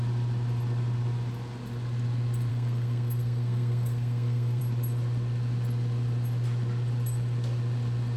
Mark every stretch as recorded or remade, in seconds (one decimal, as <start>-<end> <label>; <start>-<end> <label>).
0.0-2.5 recorded; 2.5-4.6 remade; 4.6-8.2 recorded